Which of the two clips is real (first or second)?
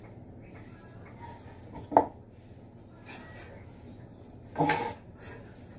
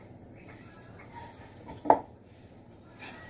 first